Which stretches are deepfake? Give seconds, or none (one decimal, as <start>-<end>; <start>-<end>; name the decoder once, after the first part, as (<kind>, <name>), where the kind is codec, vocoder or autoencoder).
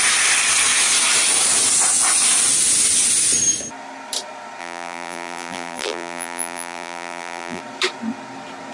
4.6-7.6 (vocoder, BigVGAN v2)